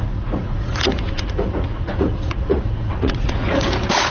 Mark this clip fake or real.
fake